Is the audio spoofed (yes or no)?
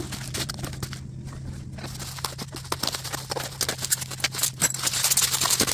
no